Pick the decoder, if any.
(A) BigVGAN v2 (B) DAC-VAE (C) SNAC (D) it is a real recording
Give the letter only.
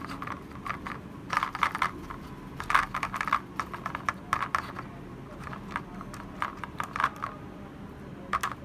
D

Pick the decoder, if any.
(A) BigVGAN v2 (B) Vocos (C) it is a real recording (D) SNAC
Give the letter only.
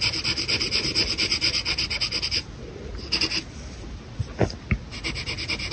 C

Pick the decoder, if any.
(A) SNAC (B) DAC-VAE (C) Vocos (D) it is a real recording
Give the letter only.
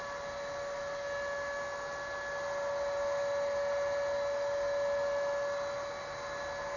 D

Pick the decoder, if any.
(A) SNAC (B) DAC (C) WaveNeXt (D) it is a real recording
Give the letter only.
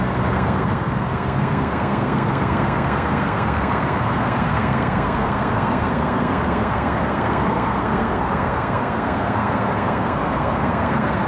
A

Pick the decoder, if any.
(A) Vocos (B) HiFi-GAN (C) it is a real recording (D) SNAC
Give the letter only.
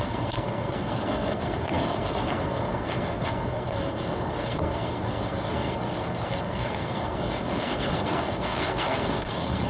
D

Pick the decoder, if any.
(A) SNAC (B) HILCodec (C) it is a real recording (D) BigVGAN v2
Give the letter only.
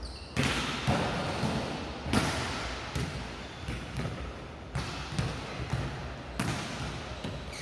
C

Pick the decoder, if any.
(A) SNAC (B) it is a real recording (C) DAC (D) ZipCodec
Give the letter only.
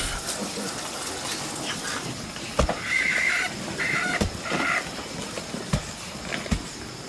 B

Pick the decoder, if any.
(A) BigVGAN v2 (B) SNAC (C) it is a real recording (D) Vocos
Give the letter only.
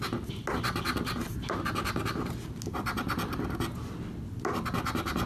C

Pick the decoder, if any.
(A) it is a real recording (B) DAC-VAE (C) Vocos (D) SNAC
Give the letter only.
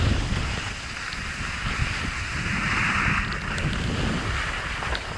A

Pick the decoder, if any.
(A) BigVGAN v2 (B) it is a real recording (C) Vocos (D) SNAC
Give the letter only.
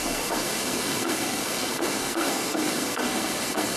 D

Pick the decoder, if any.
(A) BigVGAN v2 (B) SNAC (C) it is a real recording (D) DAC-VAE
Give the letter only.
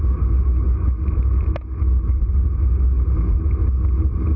C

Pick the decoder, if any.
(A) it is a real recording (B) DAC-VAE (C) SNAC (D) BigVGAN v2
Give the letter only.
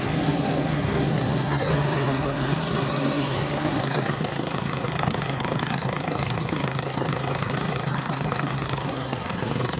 C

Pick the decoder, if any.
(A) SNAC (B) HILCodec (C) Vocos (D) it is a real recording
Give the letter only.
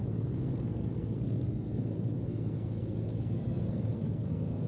A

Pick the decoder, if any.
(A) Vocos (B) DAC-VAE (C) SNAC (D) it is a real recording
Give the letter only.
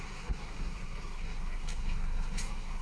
C